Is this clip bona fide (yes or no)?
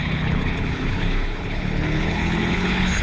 no